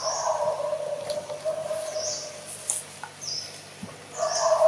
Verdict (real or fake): real